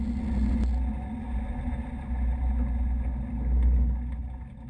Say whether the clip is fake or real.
real